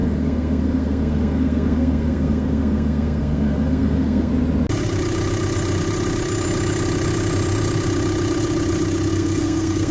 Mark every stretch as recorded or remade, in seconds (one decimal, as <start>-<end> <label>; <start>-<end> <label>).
0.0-4.3 remade; 4.3-9.1 recorded; 9.1-9.9 remade